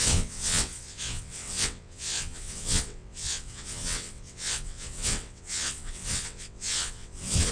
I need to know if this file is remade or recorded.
remade